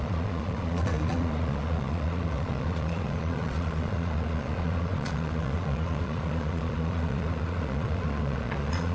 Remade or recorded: remade